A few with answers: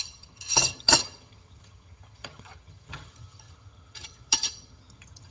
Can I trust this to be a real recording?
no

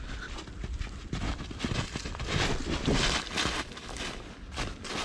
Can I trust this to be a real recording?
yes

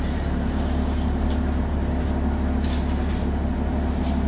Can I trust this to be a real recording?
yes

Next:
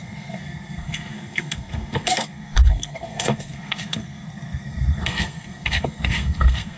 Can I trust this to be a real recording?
no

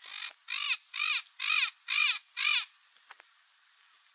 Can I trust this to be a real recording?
yes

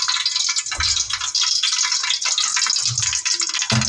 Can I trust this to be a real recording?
yes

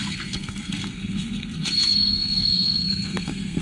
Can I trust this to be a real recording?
no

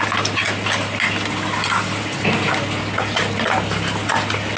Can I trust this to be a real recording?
yes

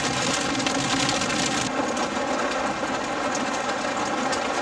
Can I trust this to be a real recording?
yes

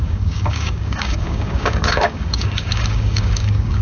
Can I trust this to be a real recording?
no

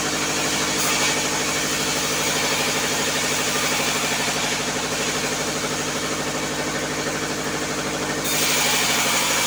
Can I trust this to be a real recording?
yes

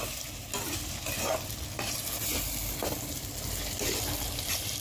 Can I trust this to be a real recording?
yes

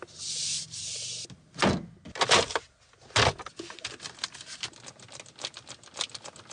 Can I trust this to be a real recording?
yes